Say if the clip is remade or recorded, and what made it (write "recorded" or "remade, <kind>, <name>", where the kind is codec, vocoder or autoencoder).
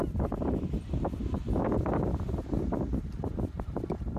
recorded